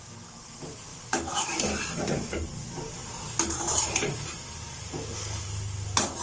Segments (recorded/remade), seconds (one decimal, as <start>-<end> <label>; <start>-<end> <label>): 0.0-0.9 recorded; 0.9-2.5 remade; 2.5-6.2 recorded